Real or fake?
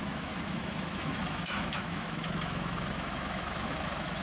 fake